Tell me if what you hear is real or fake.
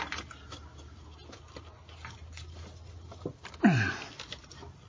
real